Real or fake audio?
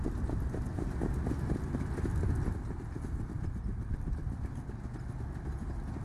real